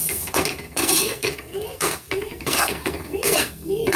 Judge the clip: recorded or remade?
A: remade